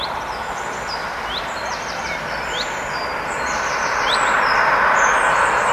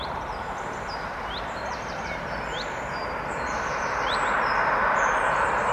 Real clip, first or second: first